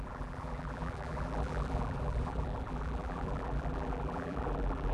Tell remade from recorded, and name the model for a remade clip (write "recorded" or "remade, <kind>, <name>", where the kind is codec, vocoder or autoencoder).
remade, vocoder, BigVGAN v2